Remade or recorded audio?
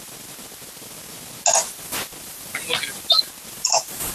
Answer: recorded